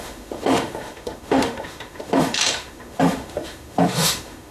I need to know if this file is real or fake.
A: fake